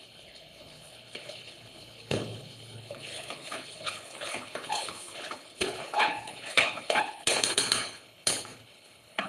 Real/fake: fake